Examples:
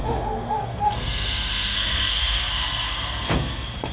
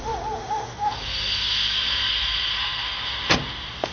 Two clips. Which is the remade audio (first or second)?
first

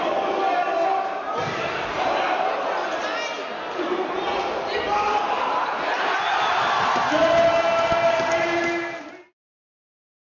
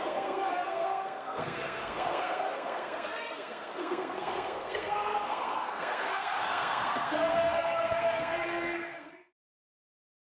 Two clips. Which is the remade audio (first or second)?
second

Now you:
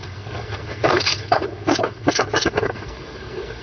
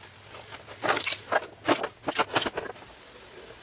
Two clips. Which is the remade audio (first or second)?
first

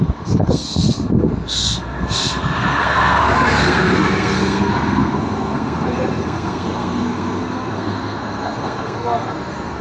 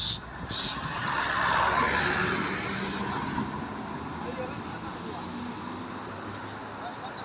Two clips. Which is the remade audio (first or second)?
first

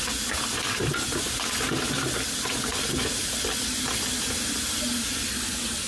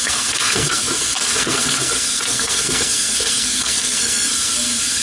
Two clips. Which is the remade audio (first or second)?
second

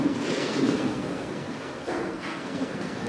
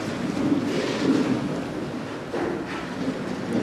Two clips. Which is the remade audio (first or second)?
first